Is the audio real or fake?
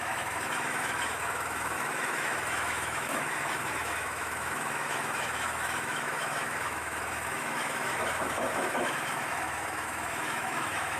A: fake